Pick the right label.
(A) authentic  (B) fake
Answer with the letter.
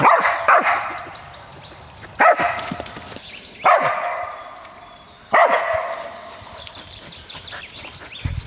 B